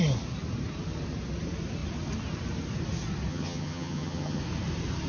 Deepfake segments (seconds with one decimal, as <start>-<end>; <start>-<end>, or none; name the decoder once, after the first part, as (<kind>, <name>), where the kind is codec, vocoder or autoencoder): 3.3-4.4 (vocoder, HiFi-GAN)